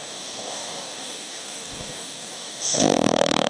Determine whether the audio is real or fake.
fake